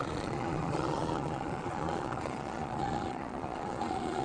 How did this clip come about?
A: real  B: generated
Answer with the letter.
B